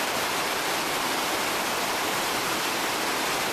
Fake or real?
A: fake